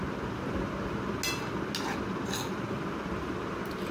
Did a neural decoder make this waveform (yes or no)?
no